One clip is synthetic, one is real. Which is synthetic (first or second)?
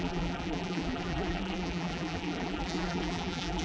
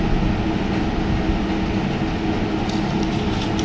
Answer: first